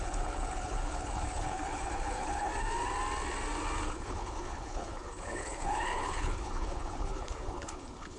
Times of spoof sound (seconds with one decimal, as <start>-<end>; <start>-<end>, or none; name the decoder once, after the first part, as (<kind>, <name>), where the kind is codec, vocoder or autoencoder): 0.0-2.5 (codec, HILCodec); 3.9-8.2